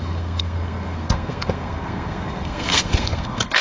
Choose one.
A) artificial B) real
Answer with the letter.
A